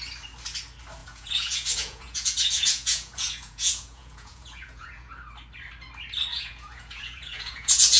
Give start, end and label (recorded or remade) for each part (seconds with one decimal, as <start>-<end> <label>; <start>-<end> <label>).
0.0-1.0 recorded; 1.0-5.1 remade; 5.1-6.3 recorded; 6.3-8.0 remade